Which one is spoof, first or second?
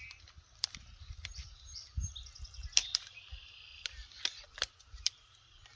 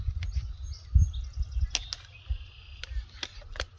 first